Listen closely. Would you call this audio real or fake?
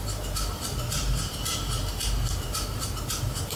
fake